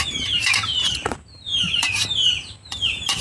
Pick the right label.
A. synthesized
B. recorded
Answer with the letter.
A